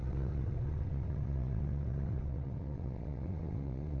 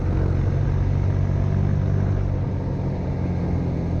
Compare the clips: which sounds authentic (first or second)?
second